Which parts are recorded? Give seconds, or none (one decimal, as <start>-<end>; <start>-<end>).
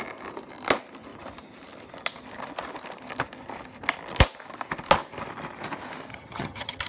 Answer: 0.0-6.1